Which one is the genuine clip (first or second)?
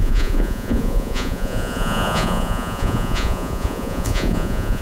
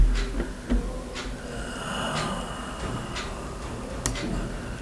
second